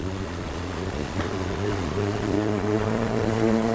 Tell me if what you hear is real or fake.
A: fake